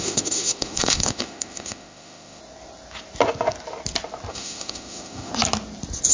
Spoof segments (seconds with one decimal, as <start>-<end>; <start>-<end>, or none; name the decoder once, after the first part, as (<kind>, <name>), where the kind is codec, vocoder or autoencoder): 0.0-2.4 (autoencoder, DAC-VAE); 4.3-5.3